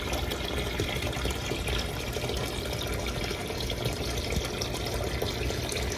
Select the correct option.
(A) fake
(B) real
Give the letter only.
B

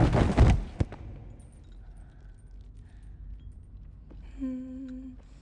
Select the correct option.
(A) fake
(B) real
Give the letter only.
B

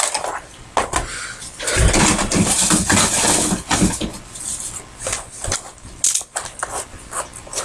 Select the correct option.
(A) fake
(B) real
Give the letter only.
B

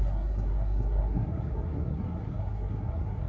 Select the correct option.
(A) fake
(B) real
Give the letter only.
A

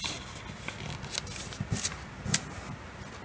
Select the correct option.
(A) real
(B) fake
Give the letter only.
A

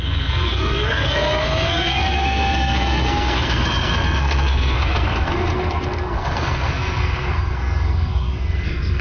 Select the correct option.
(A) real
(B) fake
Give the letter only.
B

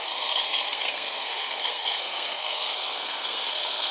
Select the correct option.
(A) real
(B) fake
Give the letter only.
B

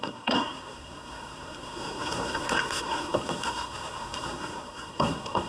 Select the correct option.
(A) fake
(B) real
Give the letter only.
A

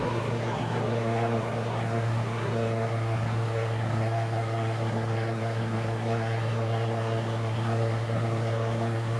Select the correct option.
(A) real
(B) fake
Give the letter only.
B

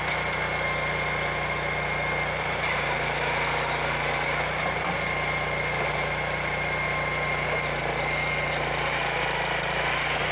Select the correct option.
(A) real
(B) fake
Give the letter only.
A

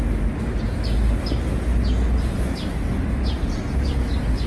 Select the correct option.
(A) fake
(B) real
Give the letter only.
B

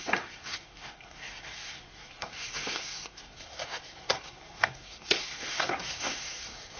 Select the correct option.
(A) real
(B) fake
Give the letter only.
B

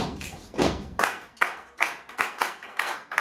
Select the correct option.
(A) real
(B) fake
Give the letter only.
B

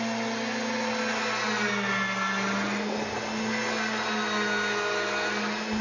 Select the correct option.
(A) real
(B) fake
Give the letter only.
A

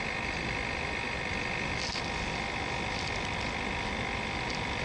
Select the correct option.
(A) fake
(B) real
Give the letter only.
B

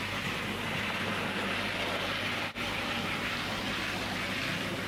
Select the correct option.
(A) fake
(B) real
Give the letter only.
B